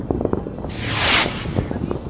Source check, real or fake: real